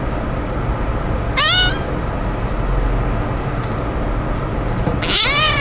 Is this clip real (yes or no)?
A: yes